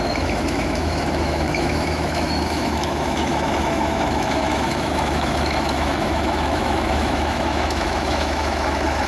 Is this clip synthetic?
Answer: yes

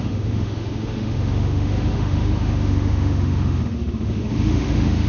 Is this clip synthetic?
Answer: yes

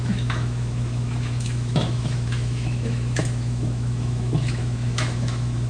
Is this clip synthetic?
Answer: yes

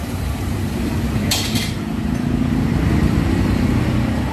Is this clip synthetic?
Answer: yes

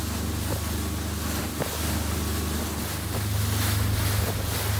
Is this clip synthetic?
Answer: no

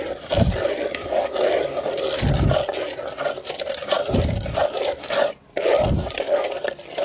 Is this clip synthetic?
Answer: no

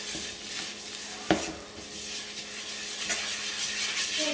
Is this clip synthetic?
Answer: no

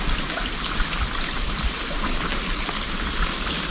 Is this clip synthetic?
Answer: no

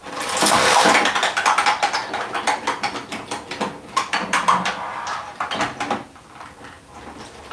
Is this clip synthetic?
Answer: no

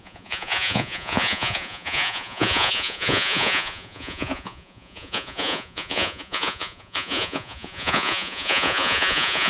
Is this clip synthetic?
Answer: yes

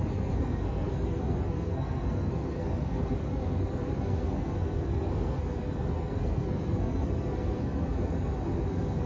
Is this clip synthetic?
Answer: yes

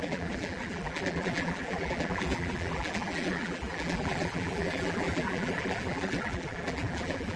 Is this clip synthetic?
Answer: yes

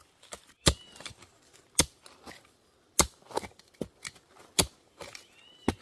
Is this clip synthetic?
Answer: no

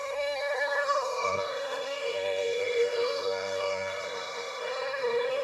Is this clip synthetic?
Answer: yes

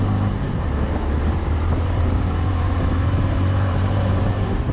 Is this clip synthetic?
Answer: yes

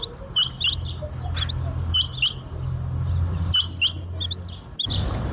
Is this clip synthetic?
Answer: no